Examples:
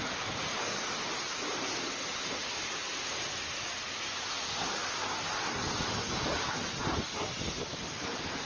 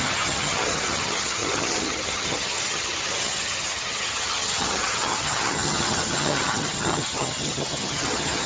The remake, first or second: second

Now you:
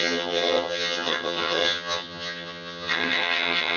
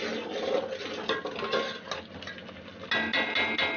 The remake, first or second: first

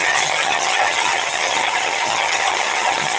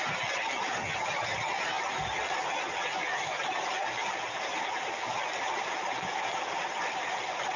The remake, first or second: first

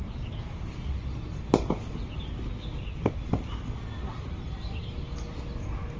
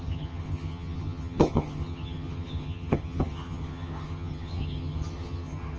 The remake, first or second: second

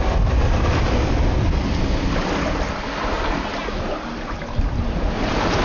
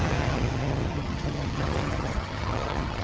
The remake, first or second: second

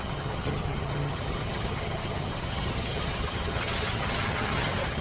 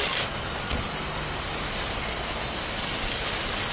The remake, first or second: first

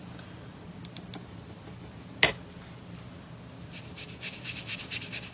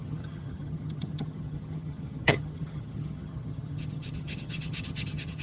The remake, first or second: second